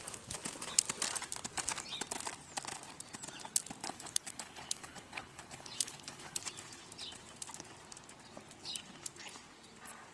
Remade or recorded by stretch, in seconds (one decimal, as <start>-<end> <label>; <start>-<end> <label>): 0.0-3.8 recorded; 3.8-6.4 remade; 6.4-10.1 recorded